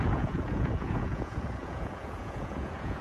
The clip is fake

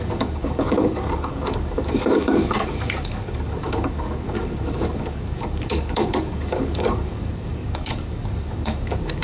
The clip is fake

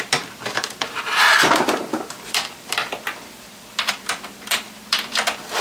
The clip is fake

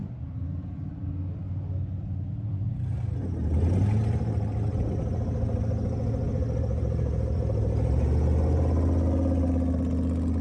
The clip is real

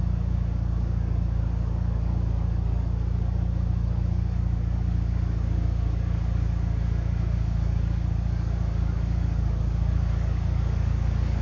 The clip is fake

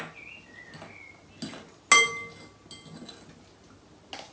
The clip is real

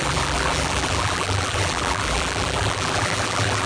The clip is fake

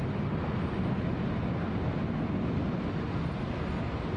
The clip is real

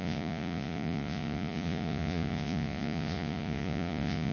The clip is fake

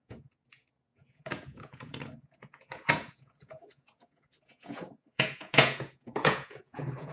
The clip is fake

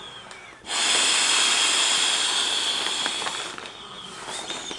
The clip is real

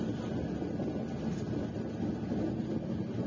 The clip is real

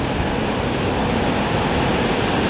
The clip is real